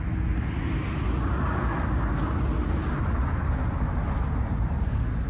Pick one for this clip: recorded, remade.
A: recorded